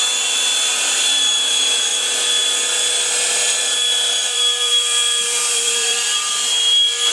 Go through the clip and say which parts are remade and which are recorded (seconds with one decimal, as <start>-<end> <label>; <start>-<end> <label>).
0.0-4.2 recorded; 4.2-6.3 remade; 6.3-7.1 recorded